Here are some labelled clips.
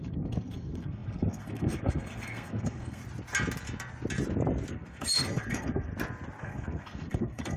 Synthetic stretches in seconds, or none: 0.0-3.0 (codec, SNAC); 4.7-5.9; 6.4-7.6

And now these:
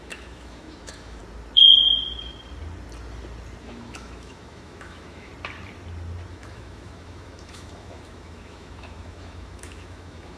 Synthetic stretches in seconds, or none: 0.0-1.2 (autoencoder, DAC-VAE); 3.6-5.3; 6.3-10.4

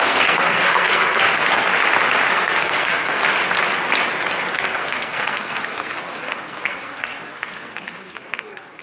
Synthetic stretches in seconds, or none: 0.0-1.7 (codec, SNAC); 2.3-3.2; 4.5-8.8

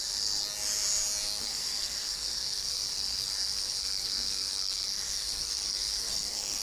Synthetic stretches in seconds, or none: 0.0-0.4 (codec, SNAC); 1.4-6.6

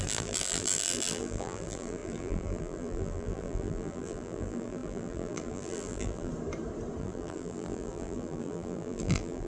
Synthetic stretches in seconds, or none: 0.0-6.3 (vocoder, BigVGAN v2); 7.0-9.5

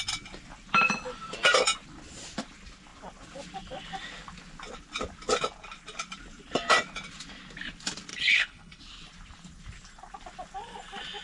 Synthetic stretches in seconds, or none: 8.1-8.8 (codec, HILCodec)

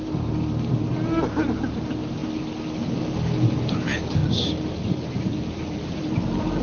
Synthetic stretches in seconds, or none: 0.0-2.2 (vocoder, BigVGAN v2); 3.7-4.2; 4.9-6.6

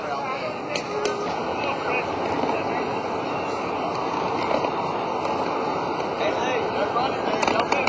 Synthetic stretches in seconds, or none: none